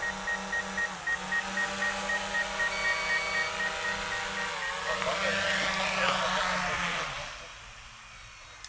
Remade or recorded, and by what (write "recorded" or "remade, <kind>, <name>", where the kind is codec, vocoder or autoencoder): recorded